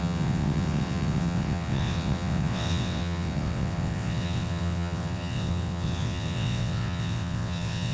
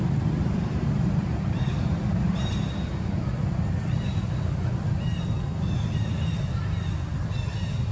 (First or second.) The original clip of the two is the second